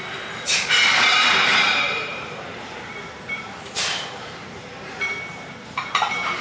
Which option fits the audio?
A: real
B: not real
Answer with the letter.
B